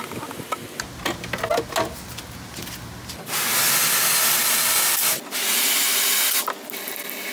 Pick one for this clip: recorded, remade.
recorded